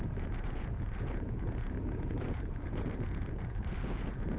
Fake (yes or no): yes